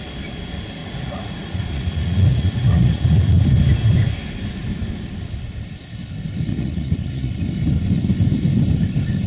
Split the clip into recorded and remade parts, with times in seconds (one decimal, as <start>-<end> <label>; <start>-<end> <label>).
0.0-0.8 recorded; 0.8-3.5 remade; 3.5-6.5 recorded; 6.5-7.3 remade; 7.3-9.3 recorded